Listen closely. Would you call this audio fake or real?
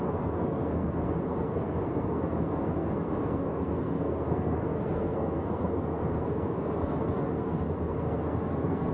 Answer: fake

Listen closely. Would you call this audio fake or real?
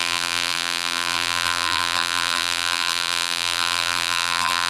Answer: fake